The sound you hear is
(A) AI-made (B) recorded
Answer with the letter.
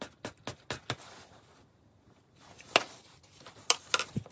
B